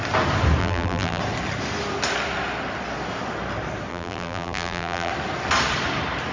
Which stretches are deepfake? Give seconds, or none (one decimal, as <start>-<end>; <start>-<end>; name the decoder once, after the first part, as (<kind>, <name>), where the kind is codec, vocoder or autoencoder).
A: 0.6-1.2 (vocoder, BigVGAN v2); 3.9-5.1